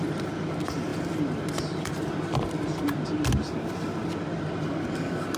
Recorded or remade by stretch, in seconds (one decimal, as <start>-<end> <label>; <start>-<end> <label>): 0.0-5.4 recorded